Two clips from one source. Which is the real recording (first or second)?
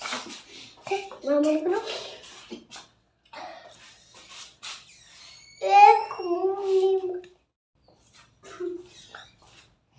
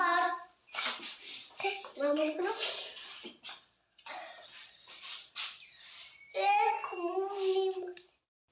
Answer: first